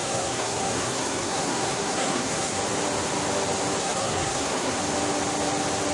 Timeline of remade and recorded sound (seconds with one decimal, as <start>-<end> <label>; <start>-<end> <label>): 0.0-2.6 remade; 2.6-3.8 recorded; 3.8-4.8 remade; 4.8-5.9 recorded